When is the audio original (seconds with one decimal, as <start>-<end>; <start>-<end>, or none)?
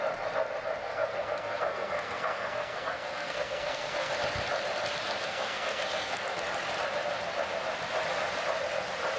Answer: 0.0-0.8; 4.1-5.2; 6.4-9.2